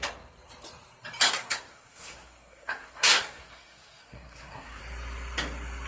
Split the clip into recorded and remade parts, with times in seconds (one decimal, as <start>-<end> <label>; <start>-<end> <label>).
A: 0.0-1.3 recorded; 1.3-4.8 remade; 4.8-5.9 recorded